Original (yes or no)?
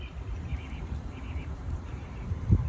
no